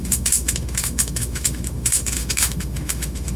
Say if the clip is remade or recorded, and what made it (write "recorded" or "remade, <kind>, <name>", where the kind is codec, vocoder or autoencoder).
remade, autoencoder, DAC-VAE